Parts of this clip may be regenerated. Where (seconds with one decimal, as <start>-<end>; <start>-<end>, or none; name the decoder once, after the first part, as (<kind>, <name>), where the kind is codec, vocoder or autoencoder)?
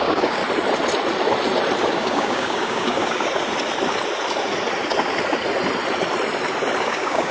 0.0-0.4 (codec, DAC); 1.9-3.3; 6.8-7.3